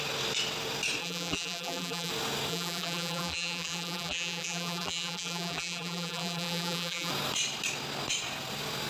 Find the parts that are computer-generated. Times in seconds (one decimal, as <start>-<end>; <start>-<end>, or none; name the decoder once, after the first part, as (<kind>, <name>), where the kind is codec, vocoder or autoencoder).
1.0-2.1 (vocoder, BigVGAN v2); 2.5-7.1